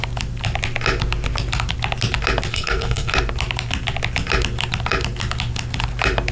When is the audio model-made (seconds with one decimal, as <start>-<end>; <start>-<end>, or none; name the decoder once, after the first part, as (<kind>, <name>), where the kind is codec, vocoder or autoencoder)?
2.5-3.1 (codec, SNAC)